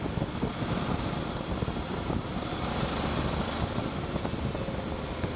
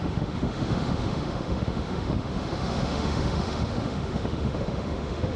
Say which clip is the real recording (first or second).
first